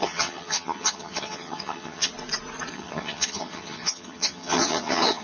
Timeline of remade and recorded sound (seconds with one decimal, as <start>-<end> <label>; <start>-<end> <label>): 0.0-2.1 remade; 2.1-2.7 recorded; 2.7-5.2 remade